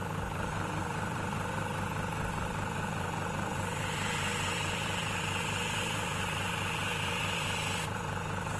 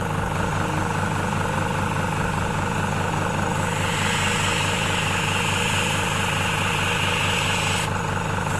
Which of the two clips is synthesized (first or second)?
first